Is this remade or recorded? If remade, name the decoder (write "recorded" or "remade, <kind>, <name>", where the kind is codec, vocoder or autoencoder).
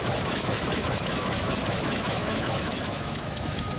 remade, autoencoder, DAC-VAE